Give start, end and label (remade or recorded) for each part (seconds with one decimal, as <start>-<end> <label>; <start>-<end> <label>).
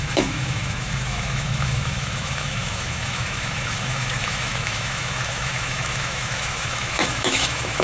0.0-7.8 remade